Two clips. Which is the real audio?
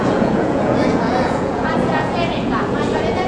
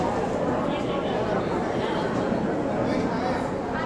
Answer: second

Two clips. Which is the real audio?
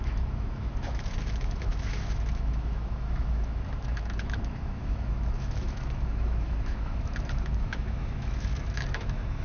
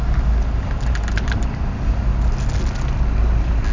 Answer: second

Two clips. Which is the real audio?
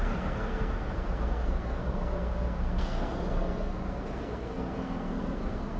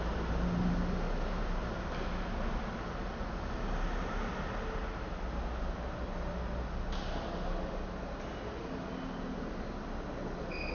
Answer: second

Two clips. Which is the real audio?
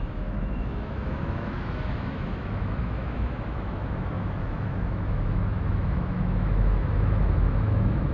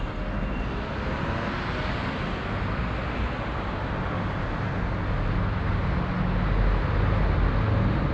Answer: second